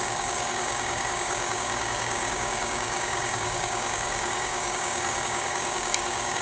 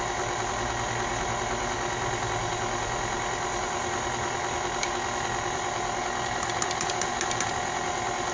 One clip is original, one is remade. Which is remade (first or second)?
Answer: first